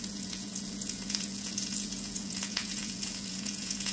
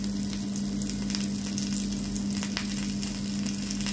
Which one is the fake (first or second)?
first